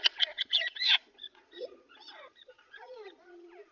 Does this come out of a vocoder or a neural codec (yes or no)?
yes